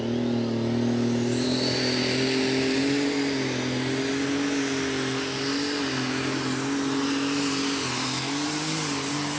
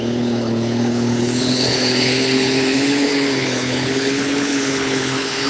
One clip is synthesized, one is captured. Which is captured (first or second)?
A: first